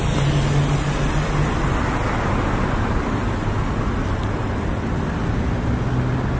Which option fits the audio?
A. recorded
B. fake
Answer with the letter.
A